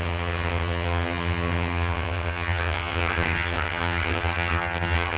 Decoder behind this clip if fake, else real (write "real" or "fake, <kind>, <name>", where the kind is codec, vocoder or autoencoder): fake, vocoder, HiFi-GAN